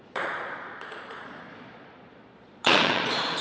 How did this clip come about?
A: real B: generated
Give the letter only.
B